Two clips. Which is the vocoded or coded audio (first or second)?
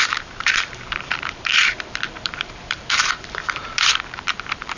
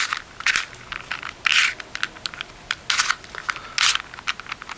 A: first